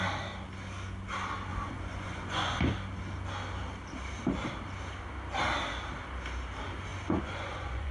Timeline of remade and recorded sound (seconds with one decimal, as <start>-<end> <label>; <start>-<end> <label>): 0.0-1.5 recorded; 1.5-2.6 remade; 2.6-6.9 recorded; 6.9-7.9 remade